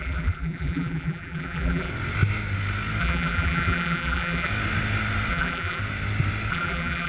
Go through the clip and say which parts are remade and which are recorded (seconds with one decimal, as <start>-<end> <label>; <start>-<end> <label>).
0.0-1.9 remade; 1.9-3.0 recorded; 3.0-4.5 remade; 4.5-5.3 recorded; 5.3-5.8 remade; 5.8-6.5 recorded; 6.5-7.1 remade